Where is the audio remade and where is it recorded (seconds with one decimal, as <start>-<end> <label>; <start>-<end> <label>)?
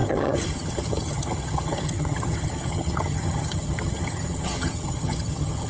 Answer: 0.0-5.7 remade